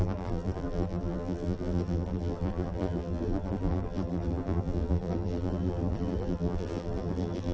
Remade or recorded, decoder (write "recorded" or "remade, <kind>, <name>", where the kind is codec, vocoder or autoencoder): remade, vocoder, BigVGAN v2